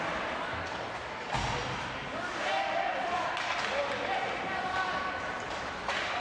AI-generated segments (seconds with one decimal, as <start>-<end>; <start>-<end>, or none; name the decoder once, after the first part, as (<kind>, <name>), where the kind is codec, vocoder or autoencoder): 2.5-3.5 (vocoder, BigVGAN v2)